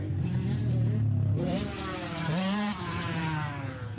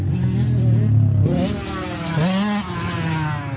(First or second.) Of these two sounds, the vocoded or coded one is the first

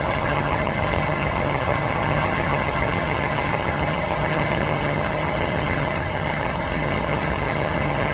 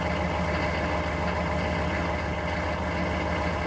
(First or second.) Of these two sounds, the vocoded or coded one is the first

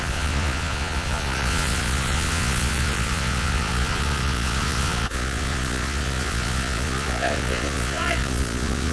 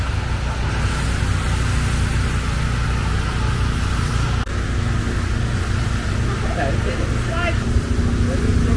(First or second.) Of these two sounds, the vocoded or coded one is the first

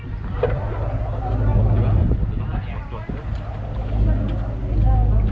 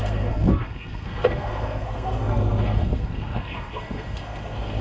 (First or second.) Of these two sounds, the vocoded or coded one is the second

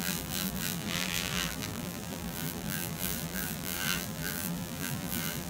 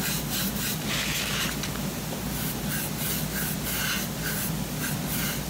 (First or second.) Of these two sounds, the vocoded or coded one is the first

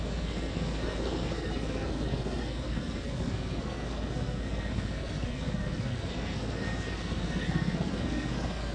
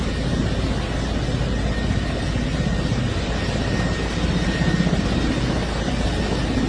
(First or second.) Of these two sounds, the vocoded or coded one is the first